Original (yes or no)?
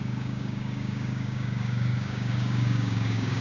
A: no